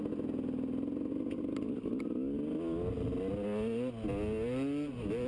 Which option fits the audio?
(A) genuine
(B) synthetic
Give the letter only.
A